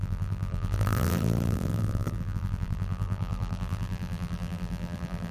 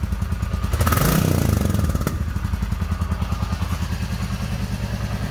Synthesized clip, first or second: first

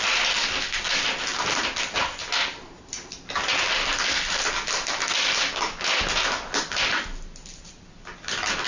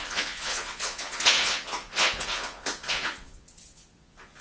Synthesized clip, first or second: second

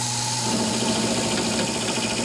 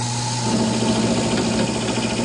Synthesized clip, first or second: first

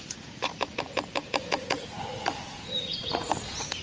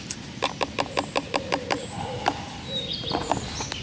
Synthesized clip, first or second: first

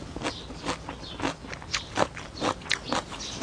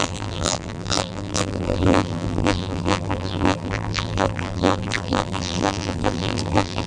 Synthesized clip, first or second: second